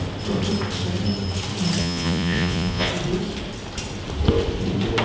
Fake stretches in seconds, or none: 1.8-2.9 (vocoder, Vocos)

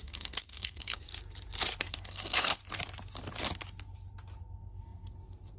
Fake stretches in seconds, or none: 0.0-1.1 (codec, SNAC); 1.8-2.6; 4.4-5.6